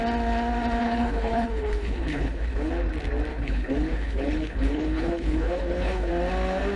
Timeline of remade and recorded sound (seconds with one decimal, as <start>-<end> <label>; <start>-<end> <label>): 0.0-0.8 recorded; 0.8-2.7 remade; 2.7-3.3 recorded; 3.3-6.1 remade; 6.1-6.8 recorded